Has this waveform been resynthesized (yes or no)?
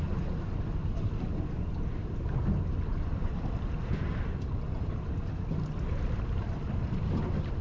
no